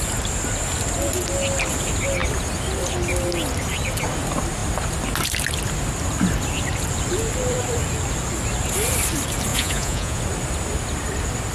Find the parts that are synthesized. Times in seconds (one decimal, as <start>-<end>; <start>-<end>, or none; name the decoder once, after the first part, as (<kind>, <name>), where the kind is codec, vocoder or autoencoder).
9.5-10.2 (vocoder, Vocos)